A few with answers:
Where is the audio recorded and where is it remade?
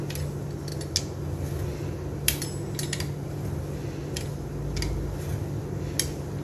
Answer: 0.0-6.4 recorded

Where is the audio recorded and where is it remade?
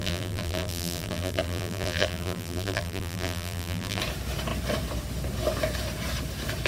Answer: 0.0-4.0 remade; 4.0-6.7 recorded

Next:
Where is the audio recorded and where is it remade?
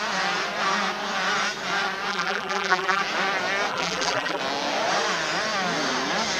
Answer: 0.0-2.1 recorded; 2.1-3.0 remade; 3.0-3.7 recorded; 3.7-4.4 remade; 4.4-6.4 recorded